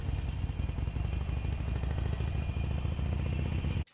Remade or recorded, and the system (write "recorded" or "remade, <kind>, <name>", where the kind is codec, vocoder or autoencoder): recorded